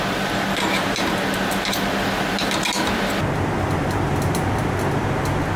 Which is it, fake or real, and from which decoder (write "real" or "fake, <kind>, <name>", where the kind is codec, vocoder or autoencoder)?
real